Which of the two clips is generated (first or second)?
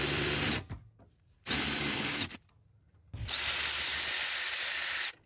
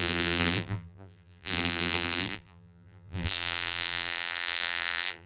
second